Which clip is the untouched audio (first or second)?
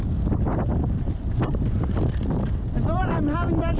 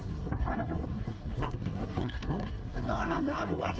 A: first